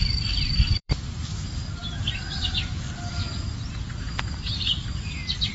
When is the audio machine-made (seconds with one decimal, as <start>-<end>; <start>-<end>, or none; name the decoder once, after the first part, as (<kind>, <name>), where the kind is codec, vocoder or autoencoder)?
0.0-1.8 (vocoder, BigVGAN v2); 2.5-5.5